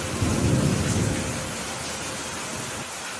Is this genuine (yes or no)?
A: yes